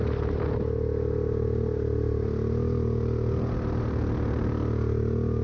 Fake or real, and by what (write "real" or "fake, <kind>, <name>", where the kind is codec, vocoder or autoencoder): real